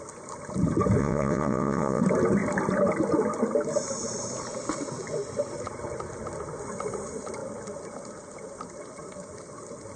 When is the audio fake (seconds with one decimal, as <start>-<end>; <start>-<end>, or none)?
1.0-2.0